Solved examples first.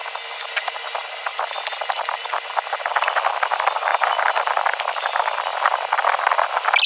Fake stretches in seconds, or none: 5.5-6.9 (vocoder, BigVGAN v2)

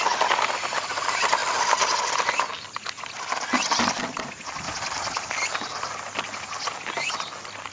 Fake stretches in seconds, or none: none

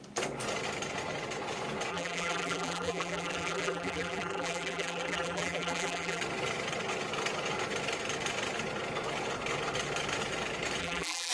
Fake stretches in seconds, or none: 1.9-6.2 (vocoder, BigVGAN v2); 10.8-11.3

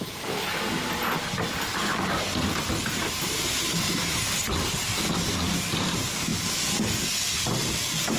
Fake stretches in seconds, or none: 2.8-4.5 (vocoder, BigVGAN v2)